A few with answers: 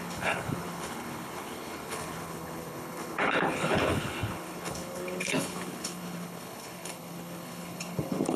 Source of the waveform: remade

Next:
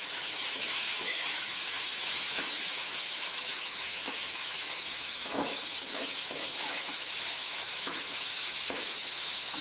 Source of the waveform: remade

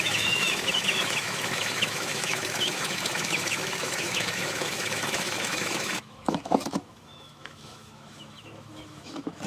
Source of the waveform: remade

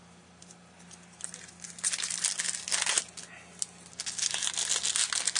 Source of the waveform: recorded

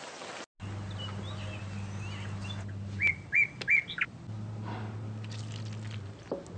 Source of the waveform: recorded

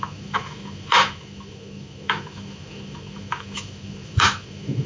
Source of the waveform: remade